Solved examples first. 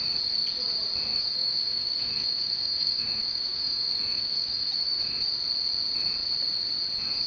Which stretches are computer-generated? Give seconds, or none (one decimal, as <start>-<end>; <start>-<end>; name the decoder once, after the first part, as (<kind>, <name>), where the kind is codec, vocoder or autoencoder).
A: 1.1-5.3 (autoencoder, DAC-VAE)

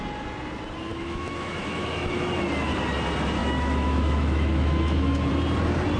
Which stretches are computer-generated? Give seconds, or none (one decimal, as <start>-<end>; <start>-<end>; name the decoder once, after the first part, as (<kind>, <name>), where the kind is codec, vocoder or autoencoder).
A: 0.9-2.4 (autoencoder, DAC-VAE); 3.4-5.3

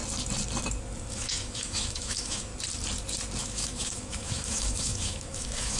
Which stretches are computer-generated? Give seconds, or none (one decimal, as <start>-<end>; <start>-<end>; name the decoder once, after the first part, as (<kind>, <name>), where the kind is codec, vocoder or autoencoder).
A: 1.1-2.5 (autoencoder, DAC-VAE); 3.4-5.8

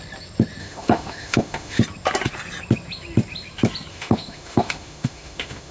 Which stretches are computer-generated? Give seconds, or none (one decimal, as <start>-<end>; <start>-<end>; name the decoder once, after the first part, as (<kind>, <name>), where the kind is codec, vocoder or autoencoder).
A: 0.6-1.8 (autoencoder, DAC-VAE); 3.9-5.7

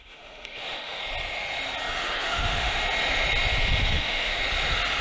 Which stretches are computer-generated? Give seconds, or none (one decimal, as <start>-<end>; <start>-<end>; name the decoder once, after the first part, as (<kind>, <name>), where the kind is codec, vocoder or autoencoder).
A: 0.0-1.0 (autoencoder, DAC-VAE); 2.0-2.8; 3.8-4.4